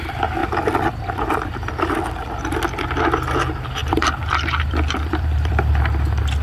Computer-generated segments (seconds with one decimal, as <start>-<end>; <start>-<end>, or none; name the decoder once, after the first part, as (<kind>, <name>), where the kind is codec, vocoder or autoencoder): 0.4-2.4 (vocoder, BigVGAN v2); 3.8-5.8